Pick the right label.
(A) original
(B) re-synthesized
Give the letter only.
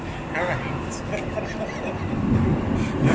A